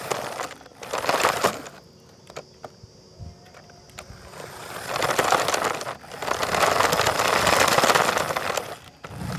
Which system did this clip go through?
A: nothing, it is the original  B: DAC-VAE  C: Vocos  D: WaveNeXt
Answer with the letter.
A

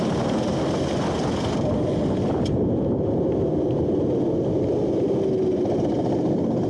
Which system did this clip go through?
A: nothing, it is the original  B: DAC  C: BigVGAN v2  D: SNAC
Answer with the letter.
A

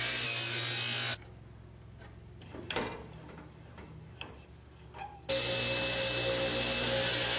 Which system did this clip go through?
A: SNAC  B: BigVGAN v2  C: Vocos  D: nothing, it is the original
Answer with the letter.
D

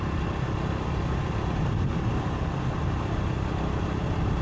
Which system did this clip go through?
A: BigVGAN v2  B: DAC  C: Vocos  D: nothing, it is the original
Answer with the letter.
D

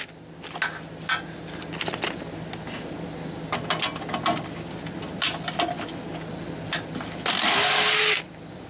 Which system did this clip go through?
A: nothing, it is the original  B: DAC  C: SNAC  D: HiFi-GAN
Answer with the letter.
A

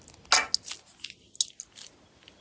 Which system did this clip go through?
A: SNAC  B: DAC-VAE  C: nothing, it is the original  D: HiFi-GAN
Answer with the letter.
C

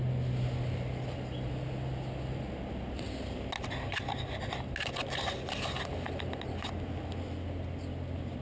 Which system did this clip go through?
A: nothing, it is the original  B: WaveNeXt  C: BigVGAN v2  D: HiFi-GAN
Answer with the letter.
A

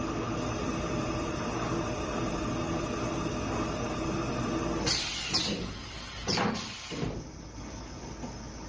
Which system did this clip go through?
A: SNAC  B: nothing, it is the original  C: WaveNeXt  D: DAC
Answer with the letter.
B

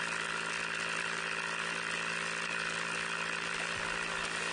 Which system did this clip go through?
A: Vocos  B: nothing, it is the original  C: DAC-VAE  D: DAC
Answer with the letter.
B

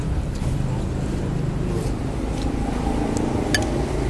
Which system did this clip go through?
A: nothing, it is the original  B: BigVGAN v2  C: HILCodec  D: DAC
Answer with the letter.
A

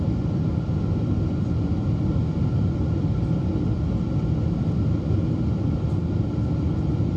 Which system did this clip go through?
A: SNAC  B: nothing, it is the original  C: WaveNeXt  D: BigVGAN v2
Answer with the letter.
B